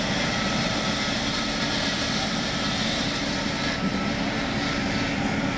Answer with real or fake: fake